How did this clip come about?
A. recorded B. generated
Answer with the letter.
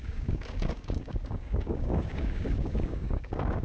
B